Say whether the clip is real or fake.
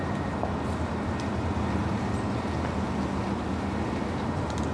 real